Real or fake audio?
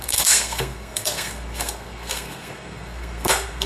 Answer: fake